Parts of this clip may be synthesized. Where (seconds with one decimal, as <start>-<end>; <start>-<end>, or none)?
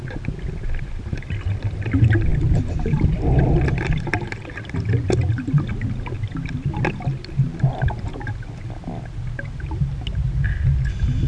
none